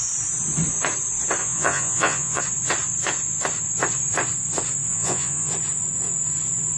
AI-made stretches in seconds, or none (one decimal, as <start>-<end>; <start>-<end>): 1.4-2.4; 4.9-5.5